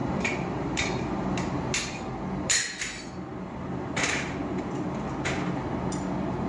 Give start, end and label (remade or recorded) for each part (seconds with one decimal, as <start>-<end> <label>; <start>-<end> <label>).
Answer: 0.0-1.6 remade; 1.6-3.3 recorded; 3.3-4.6 remade; 4.6-6.5 recorded